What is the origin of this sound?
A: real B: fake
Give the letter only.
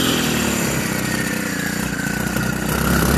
A